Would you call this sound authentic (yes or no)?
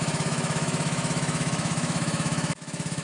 no